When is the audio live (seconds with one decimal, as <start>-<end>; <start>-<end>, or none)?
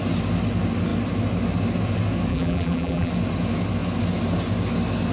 0.0-2.3; 3.1-5.1